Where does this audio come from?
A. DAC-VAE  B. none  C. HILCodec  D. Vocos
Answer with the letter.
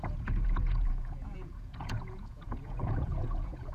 D